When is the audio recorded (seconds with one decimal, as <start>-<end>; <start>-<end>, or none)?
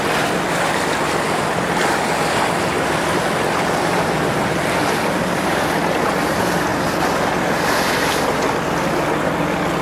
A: 0.0-9.8